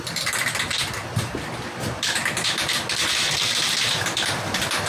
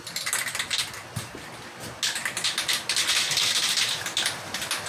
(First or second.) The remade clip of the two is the first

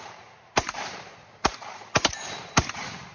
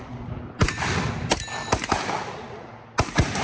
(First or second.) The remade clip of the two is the first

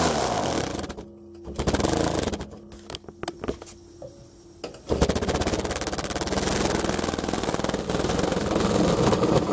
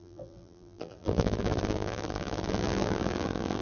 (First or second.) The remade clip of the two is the second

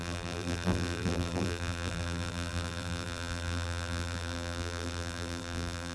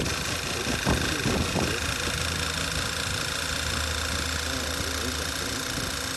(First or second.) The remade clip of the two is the first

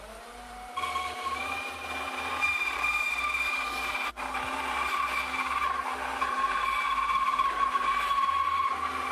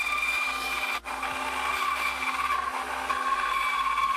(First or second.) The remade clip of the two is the first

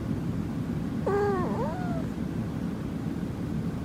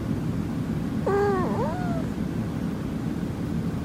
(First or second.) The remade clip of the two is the first